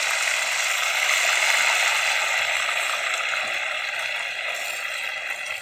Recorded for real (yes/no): yes